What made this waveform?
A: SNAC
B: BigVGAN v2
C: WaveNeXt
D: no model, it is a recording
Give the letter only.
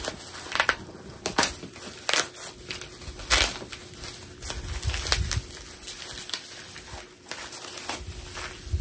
D